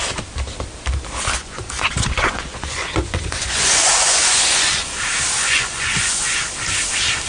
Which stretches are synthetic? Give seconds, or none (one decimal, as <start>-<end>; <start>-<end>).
1.4-5.0; 5.4-6.4